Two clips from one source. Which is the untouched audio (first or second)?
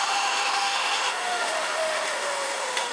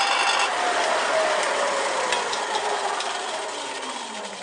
second